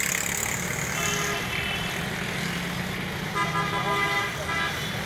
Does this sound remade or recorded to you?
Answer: recorded